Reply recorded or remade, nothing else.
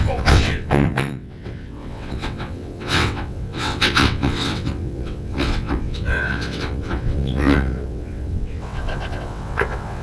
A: remade